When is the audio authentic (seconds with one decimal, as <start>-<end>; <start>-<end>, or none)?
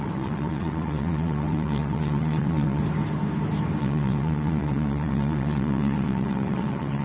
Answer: 2.8-3.8